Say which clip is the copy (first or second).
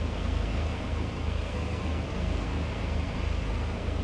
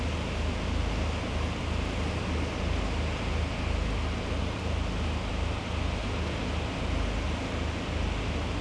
first